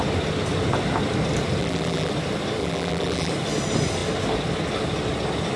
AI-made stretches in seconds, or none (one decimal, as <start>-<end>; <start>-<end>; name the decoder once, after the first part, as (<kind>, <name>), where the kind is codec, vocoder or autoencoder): 1.6-2.1 (vocoder, BigVGAN v2); 2.6-3.3